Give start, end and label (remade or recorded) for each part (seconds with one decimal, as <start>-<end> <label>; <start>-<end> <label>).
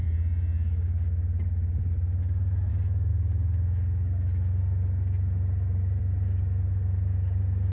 0.0-7.7 recorded